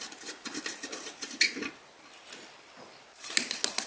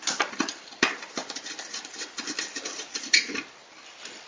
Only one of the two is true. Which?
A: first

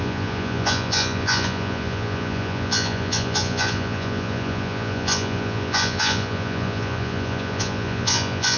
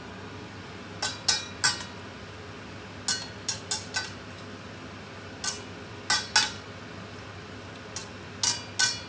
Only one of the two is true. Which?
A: second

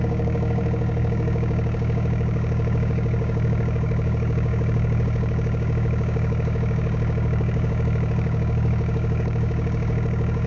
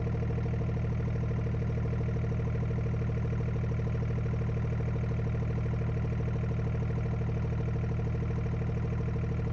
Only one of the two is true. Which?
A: second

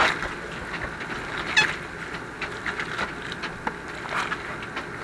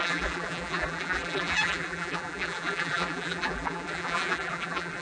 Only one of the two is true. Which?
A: first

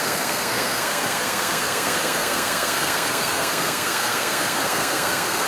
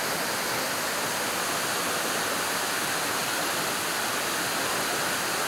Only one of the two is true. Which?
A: second